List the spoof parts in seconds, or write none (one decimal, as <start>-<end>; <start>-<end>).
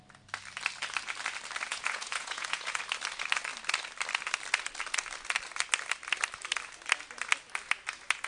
1.7-2.8